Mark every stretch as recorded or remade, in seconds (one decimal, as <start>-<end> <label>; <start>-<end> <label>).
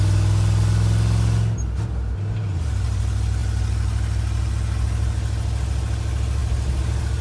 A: 0.0-7.2 recorded